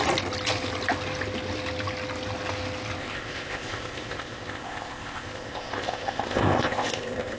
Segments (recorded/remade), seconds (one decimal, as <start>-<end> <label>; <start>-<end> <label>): 0.0-3.0 recorded; 3.0-7.4 remade